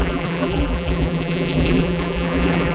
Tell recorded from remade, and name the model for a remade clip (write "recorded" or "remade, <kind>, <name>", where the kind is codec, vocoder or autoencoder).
remade, vocoder, BigVGAN v2